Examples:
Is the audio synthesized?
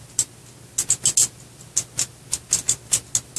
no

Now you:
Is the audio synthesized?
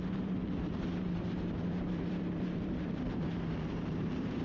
yes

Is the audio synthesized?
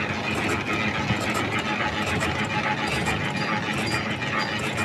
no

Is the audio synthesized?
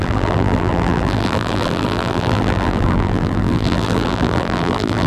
yes